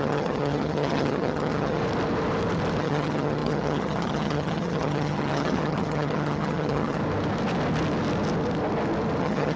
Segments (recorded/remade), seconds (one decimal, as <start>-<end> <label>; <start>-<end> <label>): 0.0-1.8 remade; 1.8-2.8 recorded; 2.8-7.0 remade; 7.0-9.2 recorded; 9.2-9.6 remade